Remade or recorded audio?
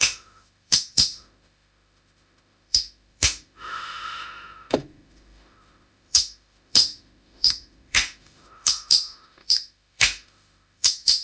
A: remade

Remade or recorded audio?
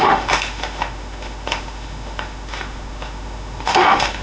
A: remade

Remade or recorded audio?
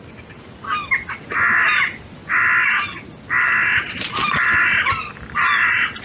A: recorded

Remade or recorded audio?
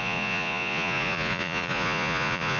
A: remade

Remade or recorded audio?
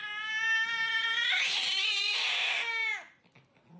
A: recorded